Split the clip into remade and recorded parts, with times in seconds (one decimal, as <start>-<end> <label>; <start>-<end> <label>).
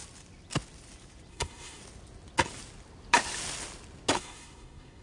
0.0-1.3 recorded; 1.3-1.8 remade; 1.8-4.2 recorded; 4.2-5.0 remade